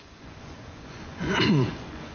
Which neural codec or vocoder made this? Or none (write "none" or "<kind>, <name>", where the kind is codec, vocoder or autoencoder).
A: vocoder, Vocos